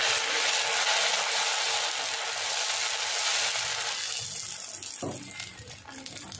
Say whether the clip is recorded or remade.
recorded